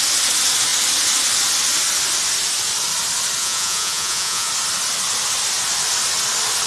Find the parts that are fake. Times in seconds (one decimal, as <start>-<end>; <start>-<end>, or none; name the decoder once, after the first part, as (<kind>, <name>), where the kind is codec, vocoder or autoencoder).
3.4-4.5 (vocoder, Vocos)